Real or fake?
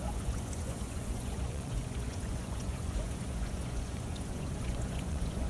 fake